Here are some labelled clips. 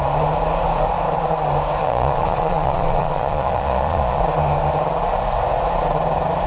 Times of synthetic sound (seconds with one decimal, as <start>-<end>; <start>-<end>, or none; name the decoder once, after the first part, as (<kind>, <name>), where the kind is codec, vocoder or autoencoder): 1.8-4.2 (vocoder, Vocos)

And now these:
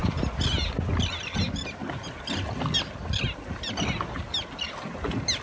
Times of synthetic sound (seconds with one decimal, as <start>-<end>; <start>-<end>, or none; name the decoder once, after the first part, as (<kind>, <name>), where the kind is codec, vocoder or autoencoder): none

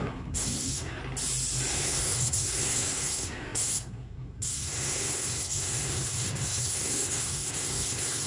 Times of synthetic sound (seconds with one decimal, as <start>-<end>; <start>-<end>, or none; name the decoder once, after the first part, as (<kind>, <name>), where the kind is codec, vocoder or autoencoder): 0.0-1.0 (codec, SNAC); 1.7-8.3

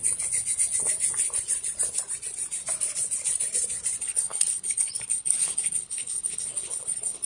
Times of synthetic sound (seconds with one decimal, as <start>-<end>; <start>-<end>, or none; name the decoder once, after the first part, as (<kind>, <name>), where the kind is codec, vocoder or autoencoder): 4.0-7.3 (codec, HILCodec)

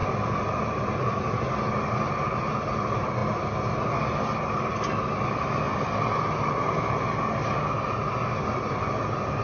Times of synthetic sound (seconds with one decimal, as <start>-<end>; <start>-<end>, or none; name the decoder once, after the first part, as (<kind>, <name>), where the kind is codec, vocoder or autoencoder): none

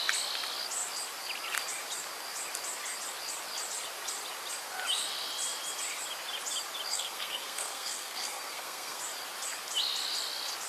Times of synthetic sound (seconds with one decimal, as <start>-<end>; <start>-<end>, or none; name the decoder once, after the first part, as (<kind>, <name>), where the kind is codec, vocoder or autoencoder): 6.9-9.0 (codec, SNAC)